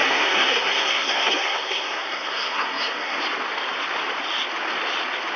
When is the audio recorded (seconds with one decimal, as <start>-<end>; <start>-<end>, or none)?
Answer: 3.2-5.4